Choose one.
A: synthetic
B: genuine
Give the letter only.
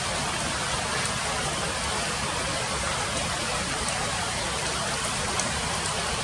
B